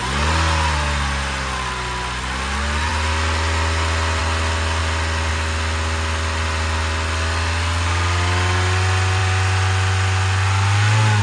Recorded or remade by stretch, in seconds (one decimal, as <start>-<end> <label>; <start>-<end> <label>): 0.0-11.2 recorded